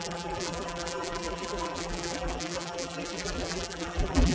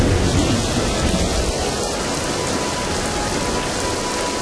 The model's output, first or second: first